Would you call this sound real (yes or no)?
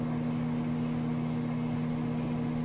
yes